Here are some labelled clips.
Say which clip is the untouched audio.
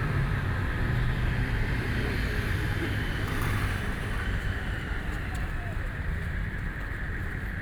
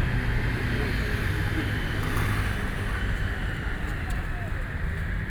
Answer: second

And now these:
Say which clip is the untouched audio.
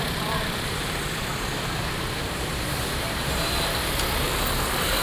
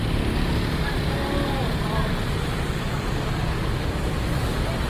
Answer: second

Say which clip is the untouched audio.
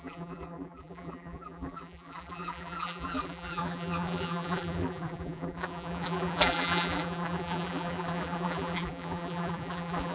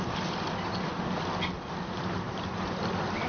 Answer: second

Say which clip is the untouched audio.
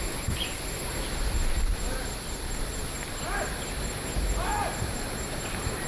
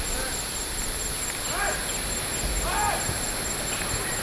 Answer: second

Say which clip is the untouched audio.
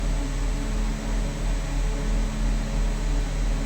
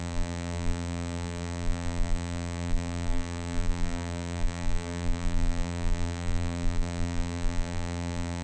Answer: first